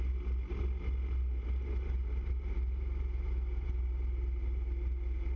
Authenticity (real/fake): real